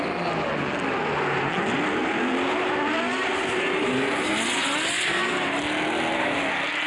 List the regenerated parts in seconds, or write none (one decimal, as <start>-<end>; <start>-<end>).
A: none